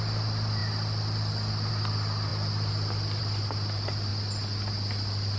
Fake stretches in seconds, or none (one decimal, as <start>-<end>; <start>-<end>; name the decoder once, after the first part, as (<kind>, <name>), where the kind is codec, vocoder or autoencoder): none